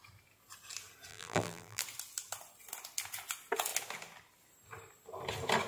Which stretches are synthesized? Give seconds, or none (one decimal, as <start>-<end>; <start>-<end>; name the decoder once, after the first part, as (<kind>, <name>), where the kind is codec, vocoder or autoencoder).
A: 1.1-1.8 (vocoder, BigVGAN v2)